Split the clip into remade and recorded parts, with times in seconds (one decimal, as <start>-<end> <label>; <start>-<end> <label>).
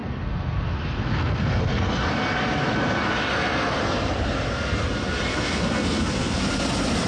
0.0-2.0 remade; 2.0-3.3 recorded; 3.3-3.8 remade; 3.8-5.3 recorded; 5.3-6.4 remade; 6.4-7.1 recorded